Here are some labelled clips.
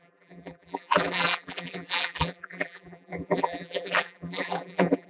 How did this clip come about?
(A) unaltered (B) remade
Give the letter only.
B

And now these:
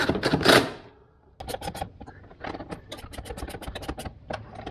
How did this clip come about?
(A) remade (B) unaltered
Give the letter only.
B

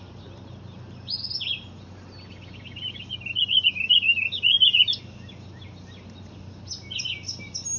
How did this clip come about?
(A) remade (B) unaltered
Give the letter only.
B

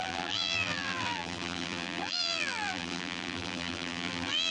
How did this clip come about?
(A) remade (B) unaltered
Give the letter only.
A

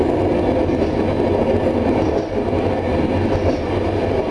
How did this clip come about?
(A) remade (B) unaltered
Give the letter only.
B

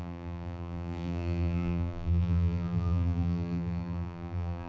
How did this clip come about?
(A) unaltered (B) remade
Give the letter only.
B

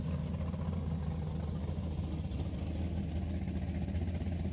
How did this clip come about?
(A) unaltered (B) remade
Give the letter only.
A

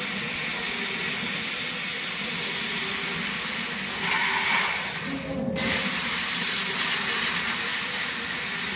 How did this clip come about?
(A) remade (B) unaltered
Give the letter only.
B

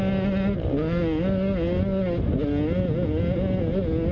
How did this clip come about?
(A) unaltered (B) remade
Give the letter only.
A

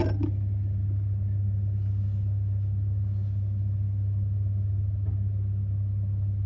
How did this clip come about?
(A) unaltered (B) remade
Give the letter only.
A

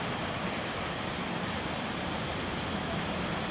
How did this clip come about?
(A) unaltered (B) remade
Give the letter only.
B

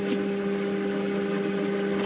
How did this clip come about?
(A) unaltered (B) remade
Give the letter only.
A